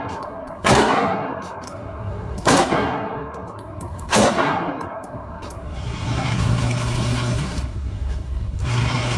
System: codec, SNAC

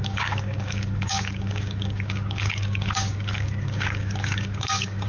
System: codec, DAC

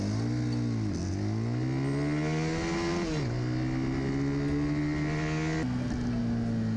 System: none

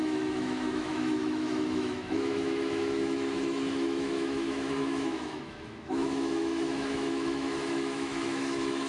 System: autoencoder, DAC-VAE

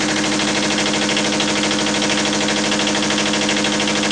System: none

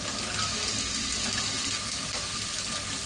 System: none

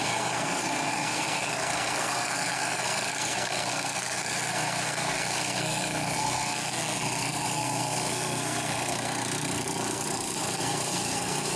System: codec, SNAC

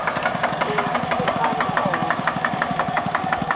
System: codec, DAC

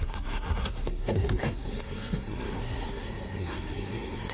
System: codec, SNAC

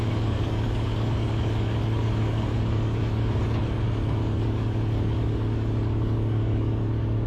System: codec, DAC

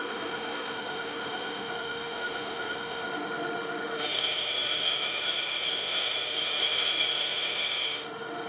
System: autoencoder, DAC-VAE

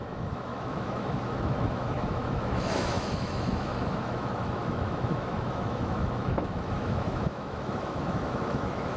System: autoencoder, DAC-VAE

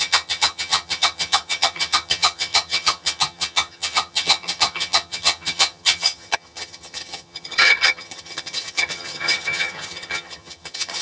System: vocoder, HiFi-GAN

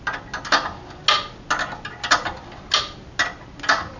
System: none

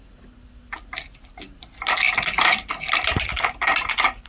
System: none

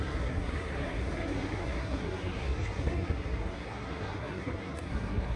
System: codec, SNAC